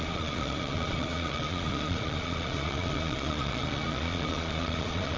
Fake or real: fake